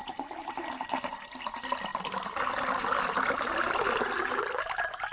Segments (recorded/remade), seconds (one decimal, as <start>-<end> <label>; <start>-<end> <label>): 0.0-5.1 recorded